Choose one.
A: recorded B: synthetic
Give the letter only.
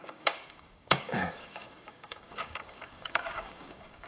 B